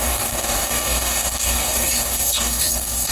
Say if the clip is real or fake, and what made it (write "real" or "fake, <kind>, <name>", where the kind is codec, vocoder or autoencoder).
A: fake, codec, DAC